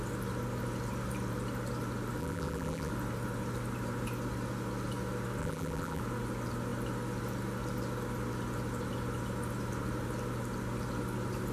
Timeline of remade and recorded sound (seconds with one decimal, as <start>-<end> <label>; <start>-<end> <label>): 0.0-2.2 recorded; 2.2-2.9 remade; 2.9-5.4 recorded; 5.4-6.0 remade; 6.0-11.5 recorded